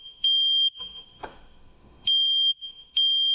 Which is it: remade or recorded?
remade